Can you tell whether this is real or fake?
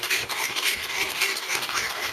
fake